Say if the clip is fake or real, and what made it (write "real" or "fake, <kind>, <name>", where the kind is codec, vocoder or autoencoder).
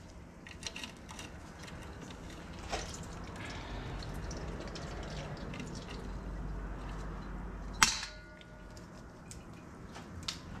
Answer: real